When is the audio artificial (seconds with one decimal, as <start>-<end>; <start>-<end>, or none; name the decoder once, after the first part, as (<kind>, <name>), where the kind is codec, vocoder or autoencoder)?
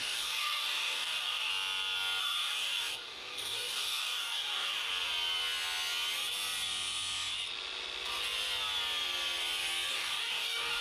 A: 0.0-1.5 (codec, DAC); 2.2-4.9; 9.9-10.8